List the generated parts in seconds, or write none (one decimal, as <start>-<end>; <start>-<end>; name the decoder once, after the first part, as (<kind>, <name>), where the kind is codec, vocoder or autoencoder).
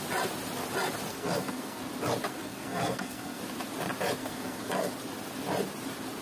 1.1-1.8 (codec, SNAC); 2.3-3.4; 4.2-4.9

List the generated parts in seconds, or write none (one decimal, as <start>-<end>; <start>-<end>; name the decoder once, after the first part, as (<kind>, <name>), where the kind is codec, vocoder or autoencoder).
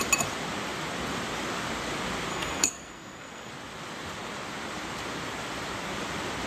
2.3-3.5 (codec, SNAC)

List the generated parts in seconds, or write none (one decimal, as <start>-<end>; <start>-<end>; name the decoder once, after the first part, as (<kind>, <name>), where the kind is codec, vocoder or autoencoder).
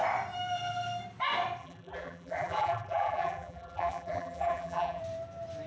1.6-5.0 (vocoder, BigVGAN v2)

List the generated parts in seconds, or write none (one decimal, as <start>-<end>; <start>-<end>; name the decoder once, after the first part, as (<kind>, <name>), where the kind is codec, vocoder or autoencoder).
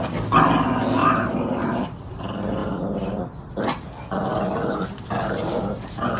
1.0-2.2 (vocoder, BigVGAN v2); 2.6-3.2